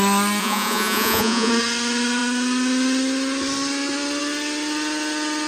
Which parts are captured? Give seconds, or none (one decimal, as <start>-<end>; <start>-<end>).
0.0-0.4; 1.5-5.5